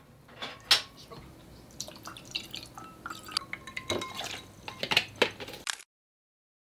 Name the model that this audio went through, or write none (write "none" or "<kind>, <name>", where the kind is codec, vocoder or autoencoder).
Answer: none